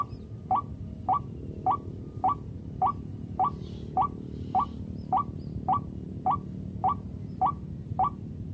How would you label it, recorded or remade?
recorded